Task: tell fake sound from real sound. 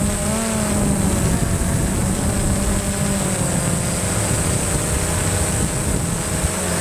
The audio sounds real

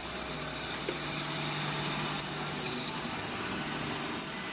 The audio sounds real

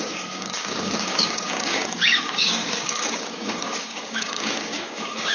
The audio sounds fake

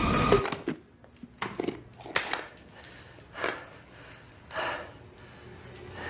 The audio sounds real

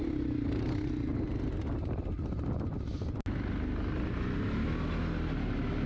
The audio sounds real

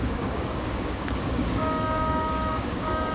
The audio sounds fake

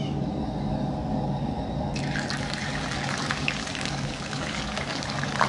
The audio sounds fake